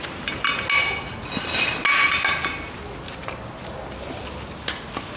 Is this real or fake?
real